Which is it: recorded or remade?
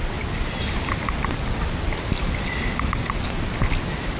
recorded